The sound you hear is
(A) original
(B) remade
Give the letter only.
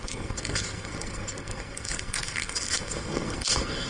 B